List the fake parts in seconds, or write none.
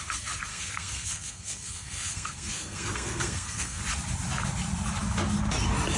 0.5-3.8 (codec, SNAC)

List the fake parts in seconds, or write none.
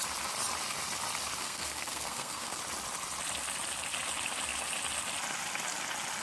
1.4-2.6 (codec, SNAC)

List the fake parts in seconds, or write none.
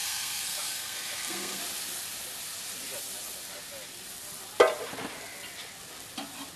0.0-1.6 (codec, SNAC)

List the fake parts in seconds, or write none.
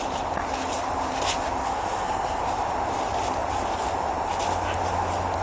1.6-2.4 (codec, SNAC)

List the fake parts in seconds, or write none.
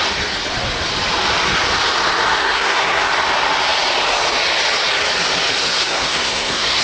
2.4-3.0 (codec, SNAC); 5.6-6.8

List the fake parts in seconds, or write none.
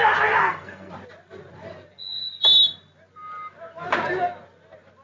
0.4-0.9 (codec, SNAC)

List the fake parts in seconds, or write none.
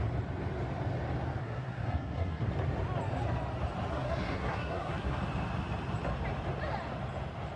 1.4-2.5 (codec, SNAC); 3.9-5.2